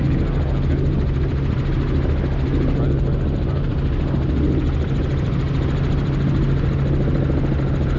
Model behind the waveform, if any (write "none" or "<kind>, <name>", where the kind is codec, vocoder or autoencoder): none